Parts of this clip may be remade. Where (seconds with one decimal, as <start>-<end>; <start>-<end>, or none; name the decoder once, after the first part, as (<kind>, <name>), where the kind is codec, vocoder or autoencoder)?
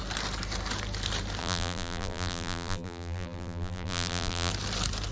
1.4-4.5 (vocoder, BigVGAN v2)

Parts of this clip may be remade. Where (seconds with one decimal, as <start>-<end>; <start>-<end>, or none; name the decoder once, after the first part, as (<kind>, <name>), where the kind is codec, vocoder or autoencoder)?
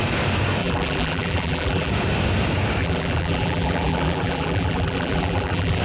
0.6-1.9 (vocoder, BigVGAN v2); 2.8-5.8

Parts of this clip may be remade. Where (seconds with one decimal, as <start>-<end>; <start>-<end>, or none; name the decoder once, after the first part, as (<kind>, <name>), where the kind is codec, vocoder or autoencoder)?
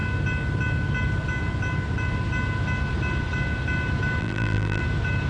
4.2-4.8 (vocoder, BigVGAN v2)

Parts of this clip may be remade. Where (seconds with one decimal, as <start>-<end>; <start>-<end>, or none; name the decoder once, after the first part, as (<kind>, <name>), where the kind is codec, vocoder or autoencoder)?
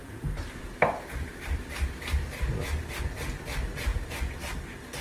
none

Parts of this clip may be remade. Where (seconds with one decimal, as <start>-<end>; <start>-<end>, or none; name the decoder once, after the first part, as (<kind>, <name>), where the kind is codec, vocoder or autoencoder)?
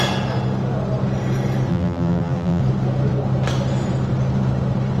1.7-2.6 (vocoder, BigVGAN v2)